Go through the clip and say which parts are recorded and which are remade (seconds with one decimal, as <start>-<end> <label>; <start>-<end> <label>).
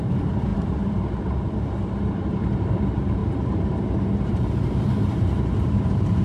0.0-6.2 remade